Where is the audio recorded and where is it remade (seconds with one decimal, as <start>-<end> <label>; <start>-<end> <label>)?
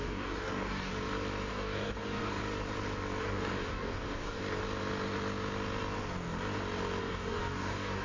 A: 0.0-0.9 remade; 0.9-1.5 recorded; 1.5-2.4 remade; 2.4-3.2 recorded; 3.2-4.4 remade; 4.4-7.0 recorded; 7.0-8.0 remade